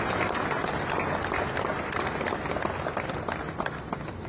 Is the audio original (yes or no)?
yes